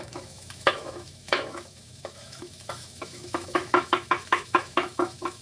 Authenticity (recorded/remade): remade